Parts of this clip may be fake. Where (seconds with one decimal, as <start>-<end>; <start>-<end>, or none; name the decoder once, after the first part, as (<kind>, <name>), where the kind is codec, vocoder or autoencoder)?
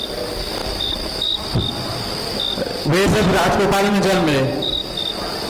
0.6-3.9 (vocoder, BigVGAN v2); 4.8-5.5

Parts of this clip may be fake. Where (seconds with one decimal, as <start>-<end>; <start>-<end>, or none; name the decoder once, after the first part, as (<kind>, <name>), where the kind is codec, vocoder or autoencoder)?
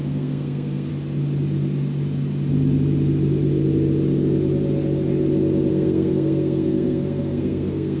0.0-0.9 (codec, SNAC); 5.7-8.0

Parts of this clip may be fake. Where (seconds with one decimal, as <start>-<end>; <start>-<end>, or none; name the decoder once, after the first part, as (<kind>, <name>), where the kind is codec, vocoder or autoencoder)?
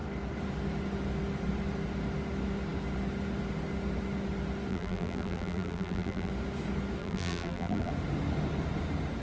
4.7-6.3 (vocoder, BigVGAN v2); 7.0-7.9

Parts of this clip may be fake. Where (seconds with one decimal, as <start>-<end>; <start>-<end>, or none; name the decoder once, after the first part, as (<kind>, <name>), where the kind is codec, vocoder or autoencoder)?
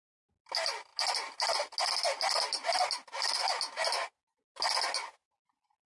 none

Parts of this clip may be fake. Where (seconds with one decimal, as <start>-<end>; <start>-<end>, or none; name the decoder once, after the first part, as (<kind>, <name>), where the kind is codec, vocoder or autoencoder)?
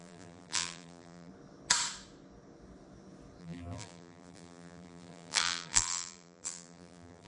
0.0-1.3 (vocoder, BigVGAN v2); 3.4-7.3